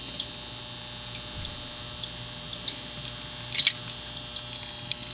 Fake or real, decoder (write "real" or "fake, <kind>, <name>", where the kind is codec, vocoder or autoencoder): real